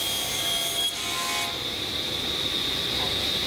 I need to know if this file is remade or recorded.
recorded